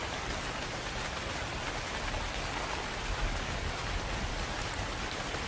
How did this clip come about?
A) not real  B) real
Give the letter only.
B